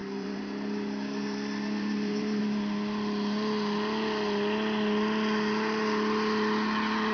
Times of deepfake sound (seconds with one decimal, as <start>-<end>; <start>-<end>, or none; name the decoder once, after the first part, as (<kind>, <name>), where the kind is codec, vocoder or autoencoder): 0.0-2.4 (vocoder, BigVGAN v2)